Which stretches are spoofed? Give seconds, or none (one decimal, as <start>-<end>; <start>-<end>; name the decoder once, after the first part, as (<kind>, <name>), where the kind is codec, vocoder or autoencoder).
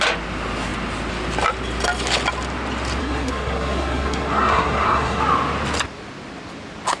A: 3.0-5.2 (codec, SNAC)